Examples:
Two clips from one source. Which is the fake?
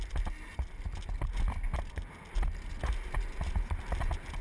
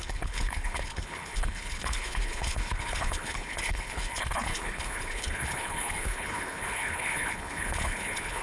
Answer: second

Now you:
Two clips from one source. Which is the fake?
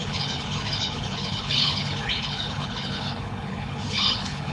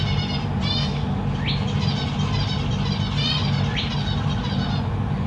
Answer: first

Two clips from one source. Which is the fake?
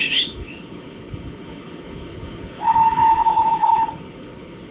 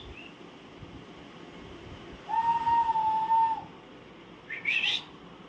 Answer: first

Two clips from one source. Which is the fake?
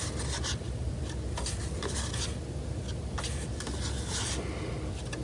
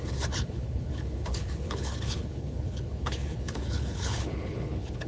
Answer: second